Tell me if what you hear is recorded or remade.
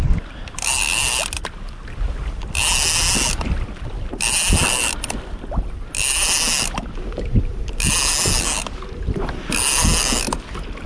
recorded